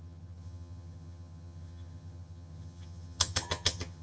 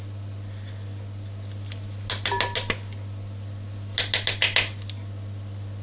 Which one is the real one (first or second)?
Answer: second